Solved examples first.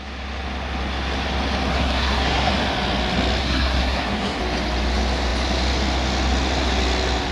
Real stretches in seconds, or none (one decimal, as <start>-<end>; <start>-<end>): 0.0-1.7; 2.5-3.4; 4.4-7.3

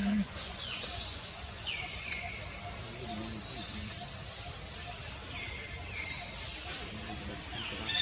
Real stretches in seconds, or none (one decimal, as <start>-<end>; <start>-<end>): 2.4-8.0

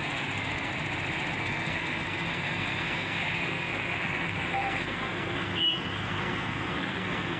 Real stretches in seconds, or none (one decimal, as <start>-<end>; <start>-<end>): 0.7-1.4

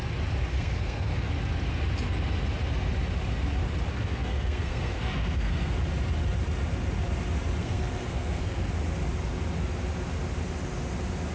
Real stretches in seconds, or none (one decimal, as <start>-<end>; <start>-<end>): 0.0-0.5; 1.3-3.9; 5.7-7.6; 8.7-11.3